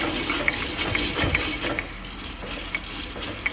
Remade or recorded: recorded